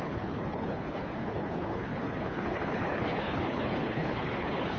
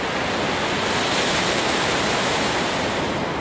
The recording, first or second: second